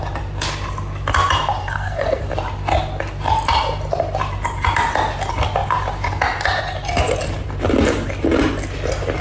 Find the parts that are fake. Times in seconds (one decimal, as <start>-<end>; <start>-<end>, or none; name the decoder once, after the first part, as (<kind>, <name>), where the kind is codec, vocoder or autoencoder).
1.6-2.2 (codec, SNAC)